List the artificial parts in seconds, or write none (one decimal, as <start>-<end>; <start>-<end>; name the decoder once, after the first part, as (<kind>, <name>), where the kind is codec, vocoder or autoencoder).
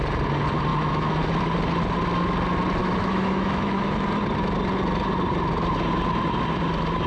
0.7-1.3 (autoencoder, DAC-VAE); 2.8-3.9